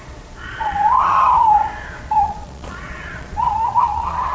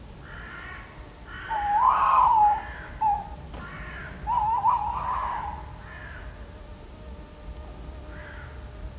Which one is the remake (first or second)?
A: first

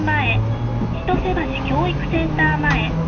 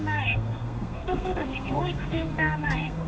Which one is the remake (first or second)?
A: second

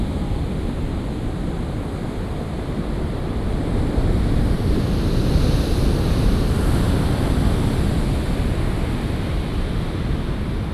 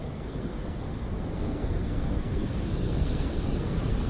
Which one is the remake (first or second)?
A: second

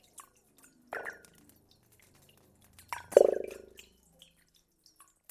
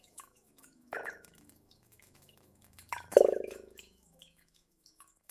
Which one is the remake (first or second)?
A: second